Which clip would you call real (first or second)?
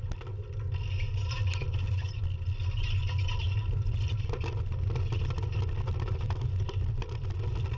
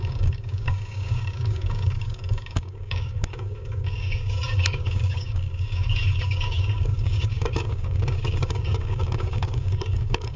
first